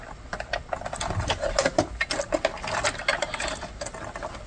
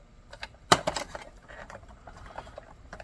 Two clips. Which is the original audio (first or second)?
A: first